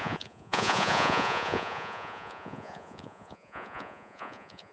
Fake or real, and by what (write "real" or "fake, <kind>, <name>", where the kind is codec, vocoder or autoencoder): fake, vocoder, Vocos